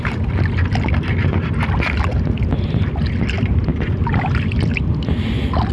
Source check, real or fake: real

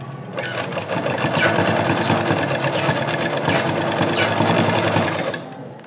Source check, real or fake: real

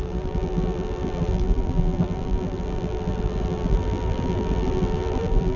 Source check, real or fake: fake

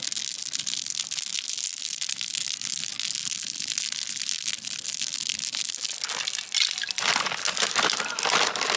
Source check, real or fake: real